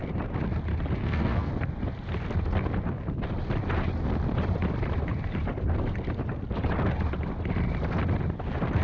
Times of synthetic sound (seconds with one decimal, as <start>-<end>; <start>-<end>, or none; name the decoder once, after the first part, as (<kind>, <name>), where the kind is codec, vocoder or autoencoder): 1.0-1.5 (codec, SNAC)